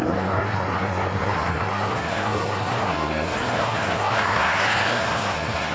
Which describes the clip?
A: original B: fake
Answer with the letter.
B